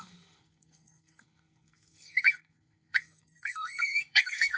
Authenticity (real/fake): fake